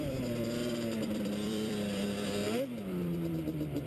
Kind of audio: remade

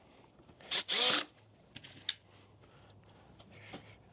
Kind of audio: recorded